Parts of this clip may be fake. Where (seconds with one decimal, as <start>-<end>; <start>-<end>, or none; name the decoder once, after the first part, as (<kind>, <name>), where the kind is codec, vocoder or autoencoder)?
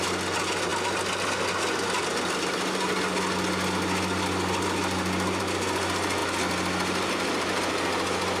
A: none